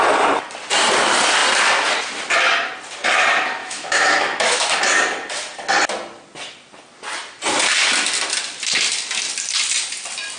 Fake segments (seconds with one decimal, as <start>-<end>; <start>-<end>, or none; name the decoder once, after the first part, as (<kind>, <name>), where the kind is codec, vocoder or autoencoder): 3.6-4.8 (autoencoder, DAC-VAE)